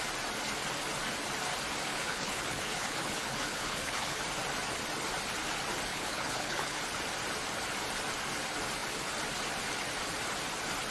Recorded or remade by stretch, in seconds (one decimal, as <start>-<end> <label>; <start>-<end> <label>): 0.0-1.9 recorded; 1.9-4.2 remade; 4.2-5.9 recorded; 5.9-6.8 remade; 6.8-10.9 recorded